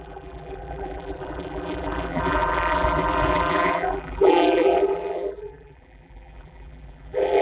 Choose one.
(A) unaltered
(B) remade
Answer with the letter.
B